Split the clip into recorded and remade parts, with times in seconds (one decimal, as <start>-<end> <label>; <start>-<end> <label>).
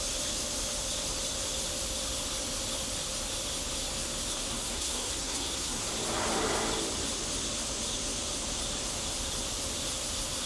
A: 0.0-4.3 recorded; 4.3-5.9 remade; 5.9-10.5 recorded